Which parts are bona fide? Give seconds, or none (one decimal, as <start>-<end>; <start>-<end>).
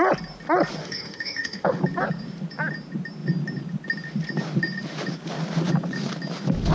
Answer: 0.0-0.8; 1.8-6.7